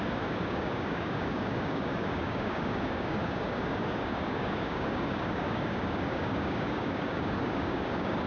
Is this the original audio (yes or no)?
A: no